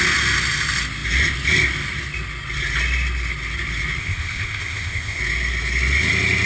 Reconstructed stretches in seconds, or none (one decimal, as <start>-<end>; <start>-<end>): 4.0-5.2